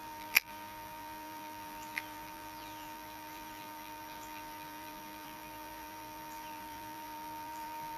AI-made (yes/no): yes